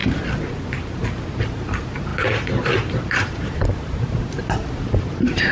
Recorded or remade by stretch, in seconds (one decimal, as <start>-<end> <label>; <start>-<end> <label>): 0.0-2.1 recorded; 2.1-5.5 remade